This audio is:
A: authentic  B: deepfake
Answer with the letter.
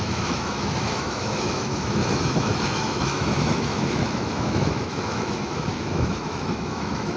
B